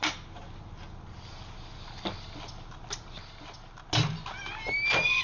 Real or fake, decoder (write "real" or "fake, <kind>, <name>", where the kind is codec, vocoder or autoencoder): real